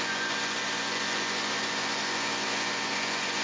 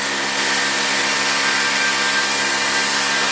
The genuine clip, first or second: second